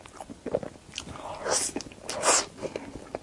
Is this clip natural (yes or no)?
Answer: yes